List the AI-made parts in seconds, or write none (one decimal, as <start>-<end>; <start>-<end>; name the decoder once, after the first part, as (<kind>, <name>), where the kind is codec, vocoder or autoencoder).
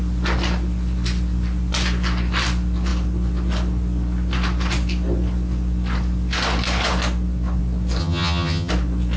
8.0-8.7 (vocoder, HiFi-GAN)